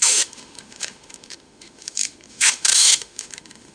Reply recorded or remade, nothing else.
remade